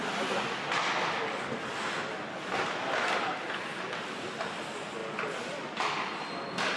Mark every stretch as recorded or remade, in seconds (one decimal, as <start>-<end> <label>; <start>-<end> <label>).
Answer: 0.0-6.8 recorded